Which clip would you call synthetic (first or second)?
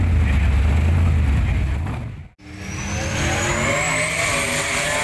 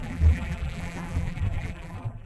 second